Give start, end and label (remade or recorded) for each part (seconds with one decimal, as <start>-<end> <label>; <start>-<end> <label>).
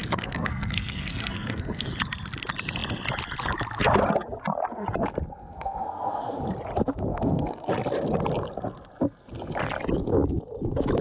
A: 0.0-1.9 remade; 1.9-5.4 recorded; 5.4-6.4 remade; 6.4-7.1 recorded; 7.1-7.7 remade; 7.7-11.0 recorded